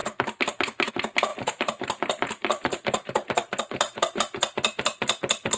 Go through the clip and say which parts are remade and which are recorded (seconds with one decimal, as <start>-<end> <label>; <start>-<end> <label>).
0.0-1.3 recorded; 1.3-4.2 remade; 4.2-5.6 recorded